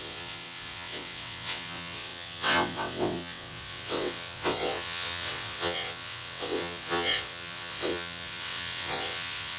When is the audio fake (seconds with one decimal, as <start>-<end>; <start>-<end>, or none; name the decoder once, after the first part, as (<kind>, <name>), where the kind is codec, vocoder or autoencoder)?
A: 0.0-9.6 (vocoder, WaveNeXt)